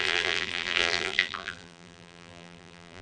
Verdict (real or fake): fake